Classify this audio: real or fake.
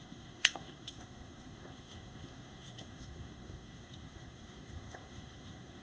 fake